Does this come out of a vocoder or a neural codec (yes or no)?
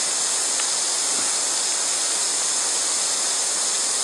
no